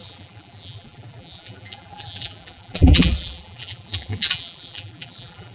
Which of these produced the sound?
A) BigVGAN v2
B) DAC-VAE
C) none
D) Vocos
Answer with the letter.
A